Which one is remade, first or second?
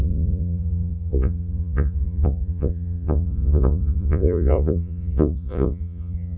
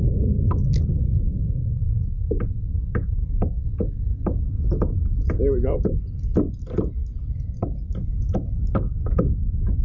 first